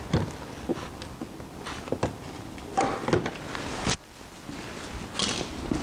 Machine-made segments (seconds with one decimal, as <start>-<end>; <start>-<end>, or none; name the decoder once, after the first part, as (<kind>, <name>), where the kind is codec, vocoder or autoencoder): none

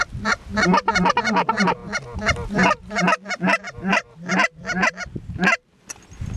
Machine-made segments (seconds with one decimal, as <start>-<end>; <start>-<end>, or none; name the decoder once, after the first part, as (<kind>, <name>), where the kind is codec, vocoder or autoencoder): none

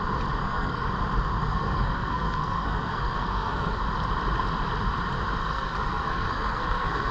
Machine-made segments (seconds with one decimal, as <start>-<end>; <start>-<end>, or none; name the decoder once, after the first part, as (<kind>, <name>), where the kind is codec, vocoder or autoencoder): 0.4-0.9 (codec, SNAC); 1.4-3.8; 5.4-7.1

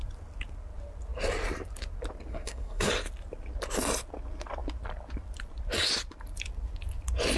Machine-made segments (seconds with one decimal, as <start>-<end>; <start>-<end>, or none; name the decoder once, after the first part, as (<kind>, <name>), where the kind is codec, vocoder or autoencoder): 2.3-2.9 (codec, SNAC)

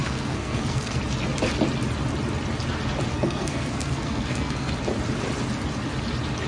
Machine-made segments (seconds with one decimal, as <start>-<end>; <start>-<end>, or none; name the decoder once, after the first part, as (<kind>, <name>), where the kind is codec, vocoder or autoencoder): 0.0-1.0 (codec, SNAC); 3.1-4.7

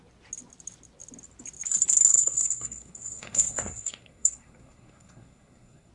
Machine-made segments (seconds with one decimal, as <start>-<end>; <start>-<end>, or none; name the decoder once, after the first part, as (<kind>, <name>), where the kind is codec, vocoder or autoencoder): 2.1-5.9 (codec, SNAC)

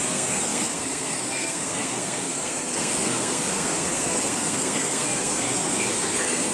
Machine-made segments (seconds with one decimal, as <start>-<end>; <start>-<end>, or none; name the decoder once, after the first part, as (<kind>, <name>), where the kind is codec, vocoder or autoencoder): 0.0-6.5 (codec, SNAC)

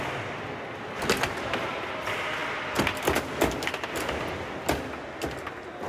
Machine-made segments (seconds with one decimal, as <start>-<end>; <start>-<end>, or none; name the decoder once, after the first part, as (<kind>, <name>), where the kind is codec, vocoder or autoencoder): none